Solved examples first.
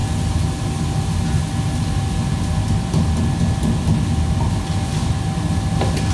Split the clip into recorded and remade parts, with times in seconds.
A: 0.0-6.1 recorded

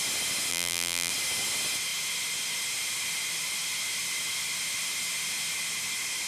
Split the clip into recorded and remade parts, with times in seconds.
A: 0.0-0.5 recorded; 0.5-1.1 remade; 1.1-6.3 recorded

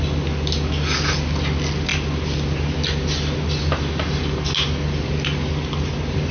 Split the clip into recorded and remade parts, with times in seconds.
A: 0.0-6.3 recorded

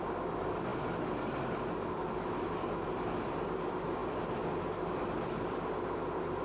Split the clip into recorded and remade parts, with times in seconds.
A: 0.0-4.0 remade; 4.0-4.9 recorded; 4.9-6.4 remade

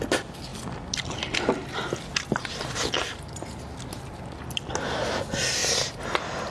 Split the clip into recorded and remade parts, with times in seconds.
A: 0.0-5.6 recorded; 5.6-6.5 remade

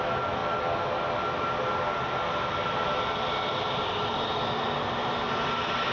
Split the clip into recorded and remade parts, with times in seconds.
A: 0.0-5.9 recorded